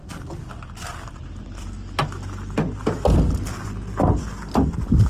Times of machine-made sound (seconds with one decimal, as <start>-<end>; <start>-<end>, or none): 0.0-1.3